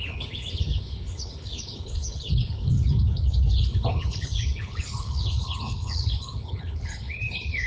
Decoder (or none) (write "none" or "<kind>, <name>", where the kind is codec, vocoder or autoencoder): codec, HILCodec